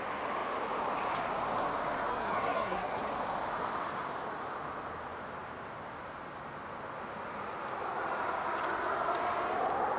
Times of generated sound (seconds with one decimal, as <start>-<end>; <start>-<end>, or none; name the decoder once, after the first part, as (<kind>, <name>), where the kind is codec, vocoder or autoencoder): 2.1-3.1 (codec, SNAC)